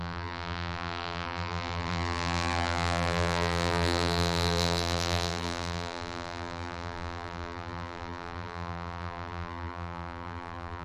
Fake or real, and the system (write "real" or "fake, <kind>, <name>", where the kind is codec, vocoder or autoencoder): fake, vocoder, BigVGAN v2